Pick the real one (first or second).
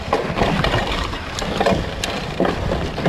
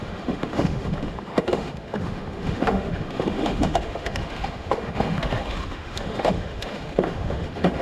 first